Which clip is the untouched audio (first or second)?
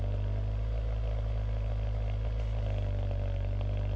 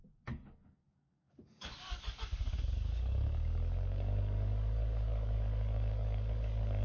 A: first